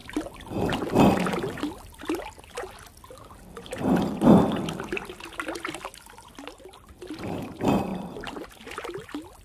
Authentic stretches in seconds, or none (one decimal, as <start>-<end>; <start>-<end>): 0.0-7.9; 8.7-9.4